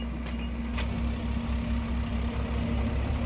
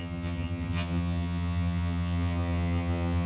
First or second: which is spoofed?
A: second